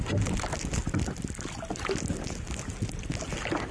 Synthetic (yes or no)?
no